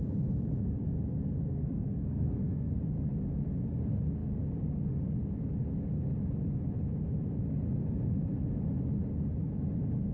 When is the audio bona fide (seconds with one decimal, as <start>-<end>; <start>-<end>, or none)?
0.0-1.5; 2.8-10.1